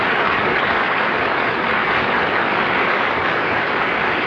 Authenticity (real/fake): fake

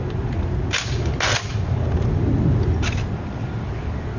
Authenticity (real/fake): real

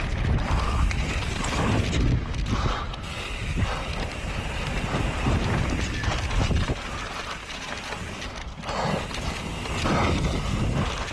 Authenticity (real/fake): real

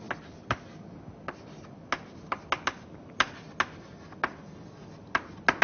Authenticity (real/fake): real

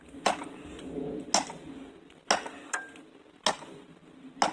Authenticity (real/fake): real